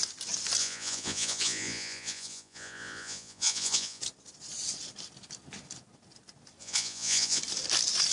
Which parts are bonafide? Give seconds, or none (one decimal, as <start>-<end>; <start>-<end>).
0.0-0.6; 4.0-6.6; 7.4-8.1